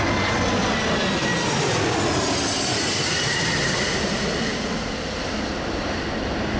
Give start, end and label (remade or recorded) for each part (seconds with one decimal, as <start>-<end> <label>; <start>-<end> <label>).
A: 0.0-6.6 recorded